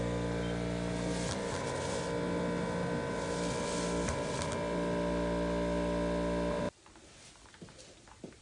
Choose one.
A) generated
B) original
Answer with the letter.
B